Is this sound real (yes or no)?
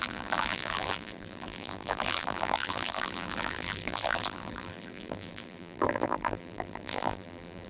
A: no